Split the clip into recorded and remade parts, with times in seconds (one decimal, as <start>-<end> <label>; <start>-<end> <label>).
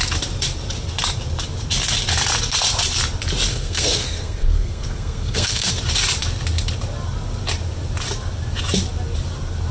0.0-3.5 recorded; 3.5-5.7 remade; 5.7-9.7 recorded